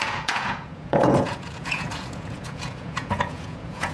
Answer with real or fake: fake